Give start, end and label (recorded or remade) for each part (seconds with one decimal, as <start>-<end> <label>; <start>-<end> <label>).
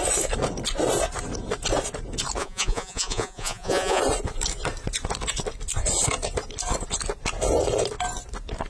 0.0-2.4 recorded; 2.4-4.0 remade; 4.0-8.7 recorded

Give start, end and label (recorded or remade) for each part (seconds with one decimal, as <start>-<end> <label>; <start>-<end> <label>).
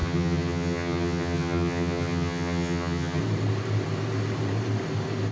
0.0-3.2 remade; 3.2-5.3 recorded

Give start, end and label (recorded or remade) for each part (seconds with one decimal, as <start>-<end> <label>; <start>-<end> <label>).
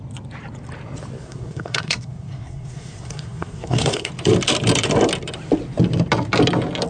0.0-1.2 recorded; 1.2-4.1 remade; 4.1-6.9 recorded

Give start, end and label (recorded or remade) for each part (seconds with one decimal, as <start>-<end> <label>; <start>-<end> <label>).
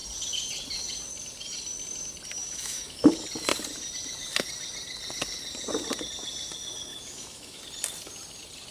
0.0-2.4 recorded; 2.4-3.1 remade; 3.1-6.9 recorded; 6.9-7.6 remade; 7.6-8.7 recorded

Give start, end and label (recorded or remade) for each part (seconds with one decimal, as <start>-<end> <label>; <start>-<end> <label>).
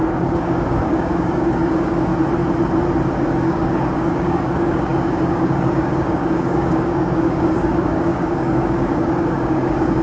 0.0-2.1 remade; 2.1-3.2 recorded; 3.2-10.0 remade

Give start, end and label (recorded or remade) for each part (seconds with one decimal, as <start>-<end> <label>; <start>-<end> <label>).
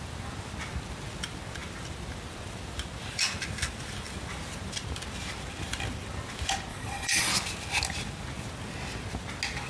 0.0-6.7 recorded; 6.7-7.3 remade; 7.3-9.7 recorded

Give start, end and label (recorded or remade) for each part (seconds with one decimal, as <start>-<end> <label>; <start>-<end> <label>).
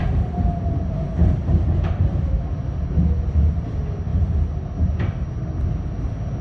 0.0-1.4 recorded; 1.4-2.4 remade; 2.4-6.4 recorded